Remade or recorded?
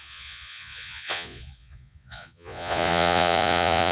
remade